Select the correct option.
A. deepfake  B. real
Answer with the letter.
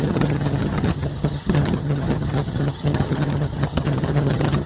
A